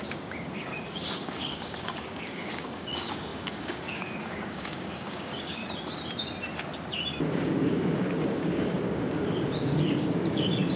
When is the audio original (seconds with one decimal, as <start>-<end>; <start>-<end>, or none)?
5.6-7.3